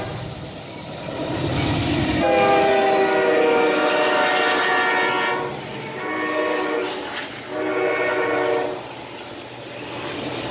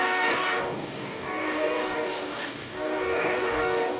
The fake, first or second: second